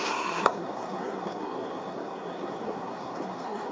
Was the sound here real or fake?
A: fake